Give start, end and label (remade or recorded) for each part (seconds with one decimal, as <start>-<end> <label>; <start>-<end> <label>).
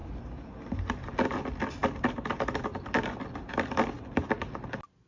0.0-5.1 recorded